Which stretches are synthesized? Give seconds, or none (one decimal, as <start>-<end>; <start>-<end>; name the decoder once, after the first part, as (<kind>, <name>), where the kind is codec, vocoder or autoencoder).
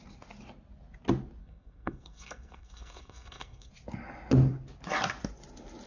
1.4-3.7 (codec, SNAC)